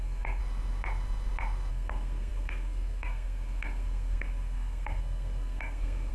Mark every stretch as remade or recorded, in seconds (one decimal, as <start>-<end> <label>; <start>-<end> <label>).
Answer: 0.0-0.4 remade; 0.4-1.7 recorded; 1.7-6.1 remade